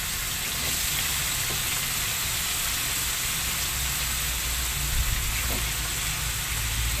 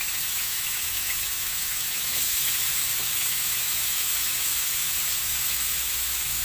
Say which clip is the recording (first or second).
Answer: first